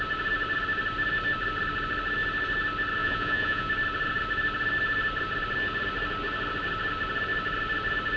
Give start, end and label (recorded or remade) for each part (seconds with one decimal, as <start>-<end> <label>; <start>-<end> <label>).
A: 0.0-3.0 recorded; 3.0-3.7 remade; 3.7-8.2 recorded